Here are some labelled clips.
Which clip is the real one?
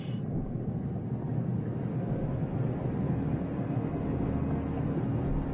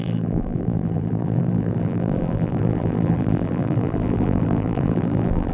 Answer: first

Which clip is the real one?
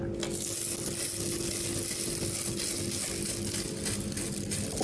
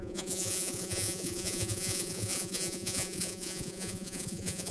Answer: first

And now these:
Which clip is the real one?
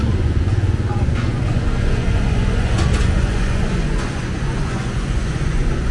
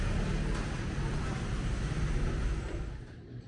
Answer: second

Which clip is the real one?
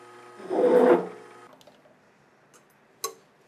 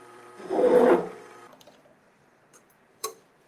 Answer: first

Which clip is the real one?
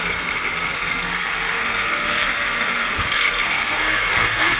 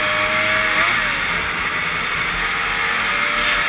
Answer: second